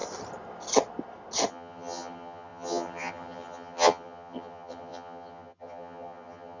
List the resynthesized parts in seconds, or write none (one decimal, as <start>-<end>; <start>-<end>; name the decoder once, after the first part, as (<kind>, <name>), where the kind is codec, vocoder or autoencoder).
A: 1.5-6.6 (vocoder, HiFi-GAN)